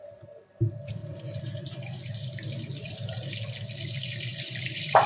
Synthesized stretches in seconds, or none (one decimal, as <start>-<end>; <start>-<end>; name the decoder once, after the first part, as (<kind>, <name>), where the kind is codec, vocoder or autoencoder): 0.0-0.6 (vocoder, BigVGAN v2); 1.0-3.3; 4.3-5.1